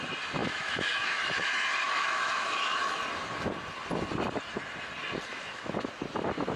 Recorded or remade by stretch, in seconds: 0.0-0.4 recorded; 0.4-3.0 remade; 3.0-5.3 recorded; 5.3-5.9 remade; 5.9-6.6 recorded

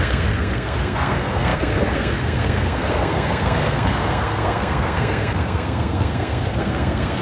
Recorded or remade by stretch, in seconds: 0.0-7.2 remade

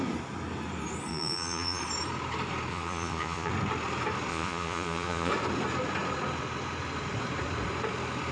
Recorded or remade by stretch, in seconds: 0.0-1.1 recorded; 1.1-1.8 remade; 1.8-2.7 recorded; 2.7-3.5 remade; 3.5-4.3 recorded; 4.3-5.3 remade; 5.3-8.3 recorded

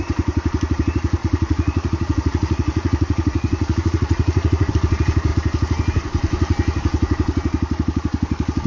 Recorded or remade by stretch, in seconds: 0.0-1.2 recorded; 1.2-4.7 remade; 4.7-8.7 recorded

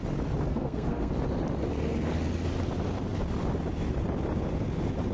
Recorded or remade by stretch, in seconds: 0.0-0.5 recorded; 0.5-1.1 remade; 1.1-5.1 recorded

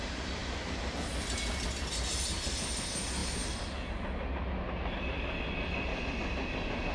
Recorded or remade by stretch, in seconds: 0.0-6.9 recorded

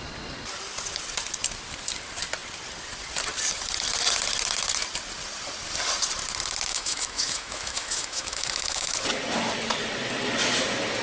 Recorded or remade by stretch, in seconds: 0.0-6.7 recorded; 6.7-9.0 remade; 9.0-11.0 recorded